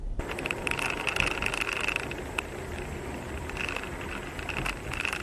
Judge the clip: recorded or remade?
recorded